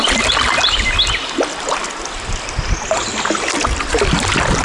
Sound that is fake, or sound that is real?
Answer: real